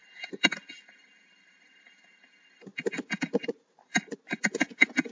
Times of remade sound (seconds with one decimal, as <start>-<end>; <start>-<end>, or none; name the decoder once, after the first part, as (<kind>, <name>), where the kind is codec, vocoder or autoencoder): 0.0-2.7 (vocoder, BigVGAN v2); 3.3-3.9